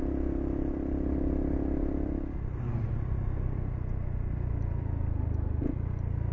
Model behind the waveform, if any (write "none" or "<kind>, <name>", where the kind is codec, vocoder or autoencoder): none